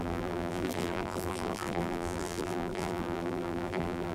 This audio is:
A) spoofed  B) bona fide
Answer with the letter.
A